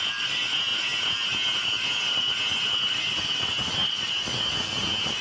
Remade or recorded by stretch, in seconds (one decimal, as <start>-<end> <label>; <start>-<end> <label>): 0.0-5.2 recorded